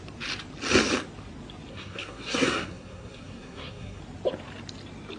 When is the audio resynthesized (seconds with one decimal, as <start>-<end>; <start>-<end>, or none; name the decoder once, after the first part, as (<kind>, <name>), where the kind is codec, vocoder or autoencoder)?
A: 1.7-4.0 (codec, SNAC)